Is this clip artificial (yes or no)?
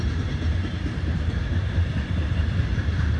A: yes